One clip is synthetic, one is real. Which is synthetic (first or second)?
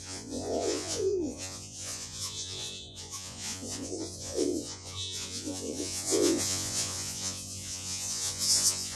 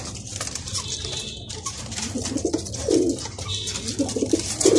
first